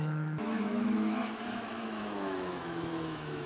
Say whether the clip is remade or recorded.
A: remade